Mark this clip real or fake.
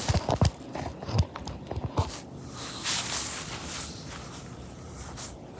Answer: real